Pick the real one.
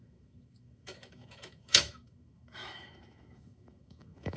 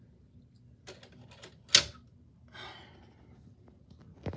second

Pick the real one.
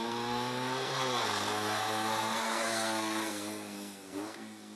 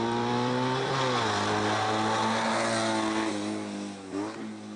second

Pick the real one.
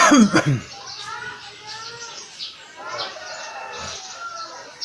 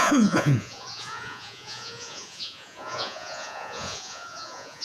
first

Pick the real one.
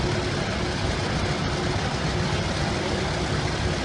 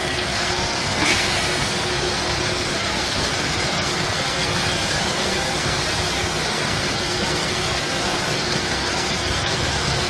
first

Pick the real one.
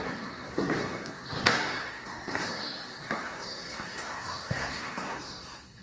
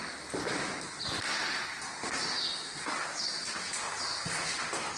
second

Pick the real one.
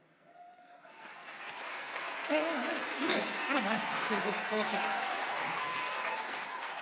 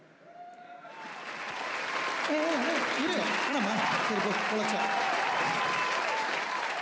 second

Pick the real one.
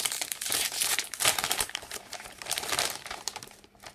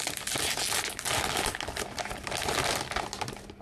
second